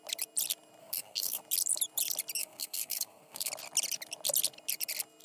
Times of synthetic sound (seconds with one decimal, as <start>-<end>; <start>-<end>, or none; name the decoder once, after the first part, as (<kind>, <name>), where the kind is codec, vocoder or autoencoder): 0.8-1.4 (codec, SNAC); 2.4-3.5